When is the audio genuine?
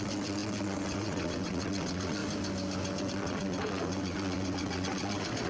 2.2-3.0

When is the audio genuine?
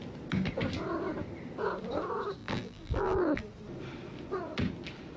0.0-2.4; 3.4-5.2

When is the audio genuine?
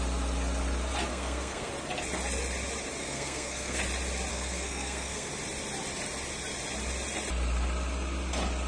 0.0-1.1; 1.7-3.0; 3.8-4.3; 5.3-8.7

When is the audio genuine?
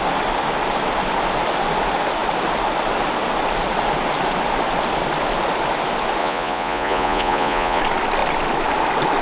0.0-6.2; 7.8-9.2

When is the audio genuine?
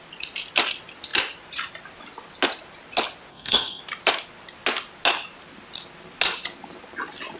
0.0-3.3; 3.8-7.4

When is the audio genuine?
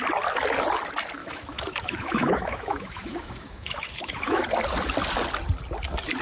0.0-1.2; 4.5-6.2